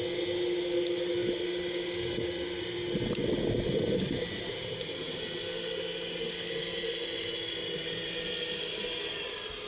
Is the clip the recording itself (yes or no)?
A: yes